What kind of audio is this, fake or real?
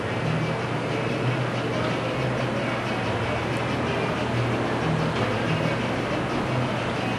real